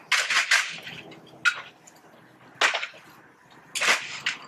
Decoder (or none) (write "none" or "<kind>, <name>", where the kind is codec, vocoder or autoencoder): none